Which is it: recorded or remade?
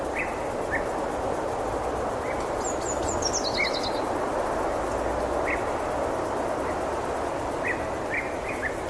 recorded